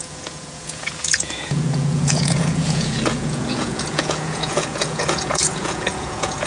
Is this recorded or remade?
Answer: remade